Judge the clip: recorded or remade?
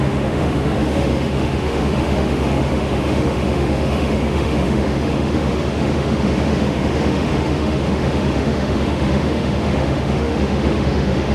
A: remade